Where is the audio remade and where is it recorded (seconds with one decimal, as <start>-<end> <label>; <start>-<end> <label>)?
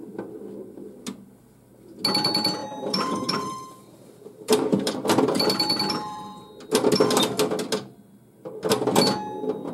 0.0-2.6 recorded; 2.6-6.5 remade; 6.5-9.7 recorded